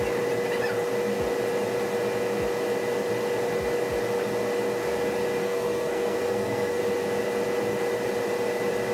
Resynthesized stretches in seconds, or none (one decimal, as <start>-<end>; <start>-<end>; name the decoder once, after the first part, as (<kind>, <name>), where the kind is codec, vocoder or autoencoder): 5.4-6.8 (codec, SNAC)